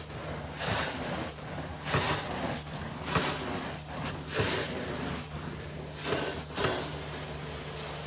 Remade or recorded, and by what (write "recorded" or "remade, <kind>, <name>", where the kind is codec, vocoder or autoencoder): recorded